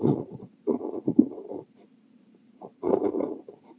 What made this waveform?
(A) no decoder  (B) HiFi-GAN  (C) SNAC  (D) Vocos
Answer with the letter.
D